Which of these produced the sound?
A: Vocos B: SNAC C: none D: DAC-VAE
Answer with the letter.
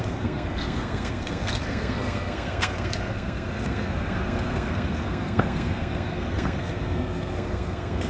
B